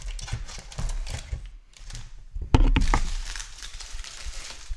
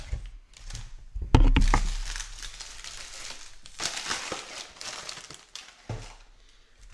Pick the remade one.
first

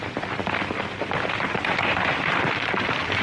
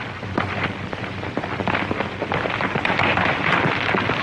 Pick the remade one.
first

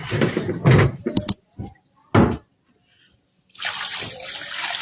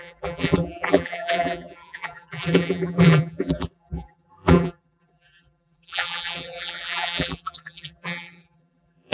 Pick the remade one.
second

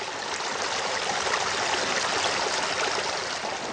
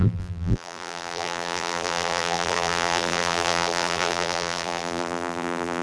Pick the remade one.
second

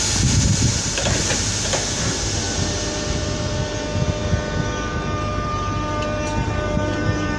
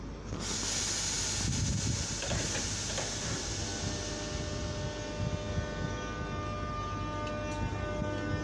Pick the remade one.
first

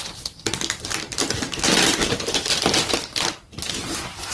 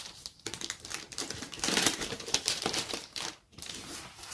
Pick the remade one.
second